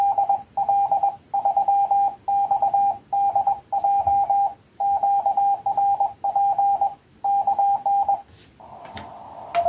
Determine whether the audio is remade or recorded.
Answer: recorded